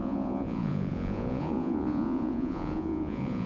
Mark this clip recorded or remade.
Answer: remade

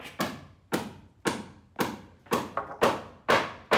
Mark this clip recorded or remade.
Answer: recorded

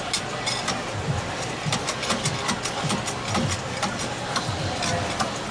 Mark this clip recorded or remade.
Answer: recorded